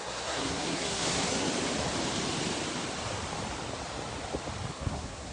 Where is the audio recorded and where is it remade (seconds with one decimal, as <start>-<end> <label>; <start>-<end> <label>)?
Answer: 0.0-1.5 remade; 1.5-4.7 recorded; 4.7-5.3 remade